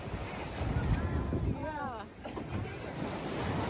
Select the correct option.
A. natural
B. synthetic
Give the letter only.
A